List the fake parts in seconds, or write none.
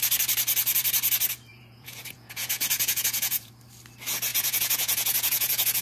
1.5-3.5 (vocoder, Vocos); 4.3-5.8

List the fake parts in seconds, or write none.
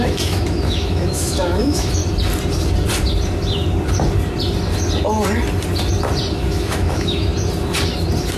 0.0-2.0 (autoencoder, DAC-VAE); 6.3-7.3